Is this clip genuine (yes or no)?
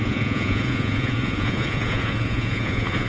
no